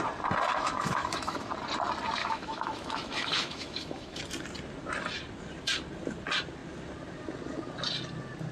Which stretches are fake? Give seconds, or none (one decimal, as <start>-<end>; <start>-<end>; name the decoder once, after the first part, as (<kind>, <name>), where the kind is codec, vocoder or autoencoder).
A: 0.5-1.5 (autoencoder, DAC-VAE); 2.2-4.2